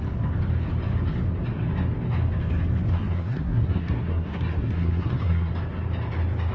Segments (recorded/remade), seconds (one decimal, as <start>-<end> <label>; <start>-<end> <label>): 0.0-2.9 recorded; 2.9-5.5 remade; 5.5-6.5 recorded